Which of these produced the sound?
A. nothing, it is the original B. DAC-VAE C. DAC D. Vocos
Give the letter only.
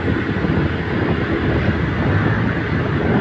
A